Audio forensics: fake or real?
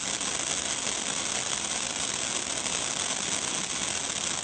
real